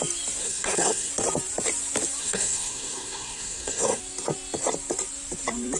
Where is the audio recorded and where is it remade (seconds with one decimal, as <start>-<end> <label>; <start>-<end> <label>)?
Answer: 0.0-0.4 recorded; 0.4-1.1 remade; 1.1-2.2 recorded; 2.2-4.0 remade; 4.0-5.8 recorded